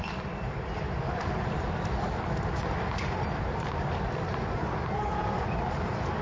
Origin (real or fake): real